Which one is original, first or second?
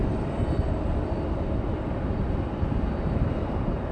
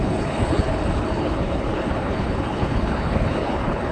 first